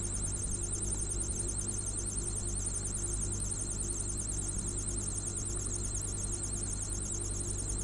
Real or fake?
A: real